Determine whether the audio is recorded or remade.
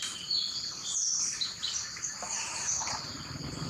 recorded